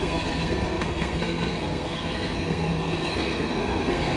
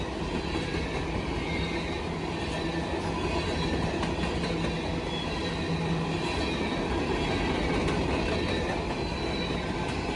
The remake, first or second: first